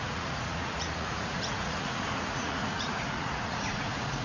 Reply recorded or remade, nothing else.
remade